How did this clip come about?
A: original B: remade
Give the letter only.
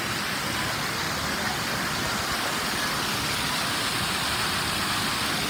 A